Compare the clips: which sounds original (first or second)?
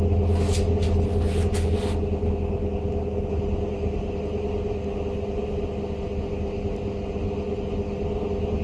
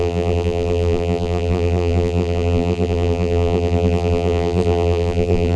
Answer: first